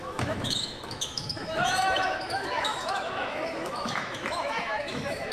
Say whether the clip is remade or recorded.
remade